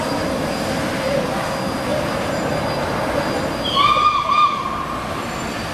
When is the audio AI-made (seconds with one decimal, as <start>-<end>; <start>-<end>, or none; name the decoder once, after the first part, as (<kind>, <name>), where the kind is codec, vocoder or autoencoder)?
none